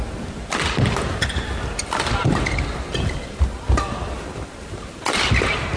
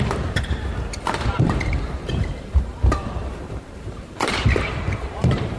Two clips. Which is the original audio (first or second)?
first